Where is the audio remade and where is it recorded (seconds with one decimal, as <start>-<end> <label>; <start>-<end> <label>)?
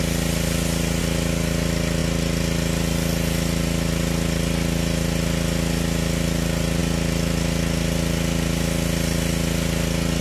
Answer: 0.0-10.2 recorded